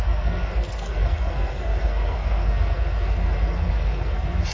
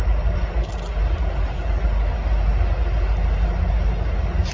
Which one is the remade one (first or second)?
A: first